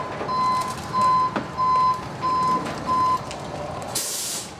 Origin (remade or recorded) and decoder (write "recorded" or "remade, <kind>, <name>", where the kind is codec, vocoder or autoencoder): recorded